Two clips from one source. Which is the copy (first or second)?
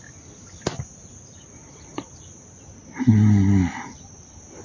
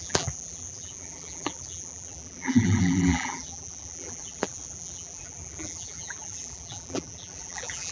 second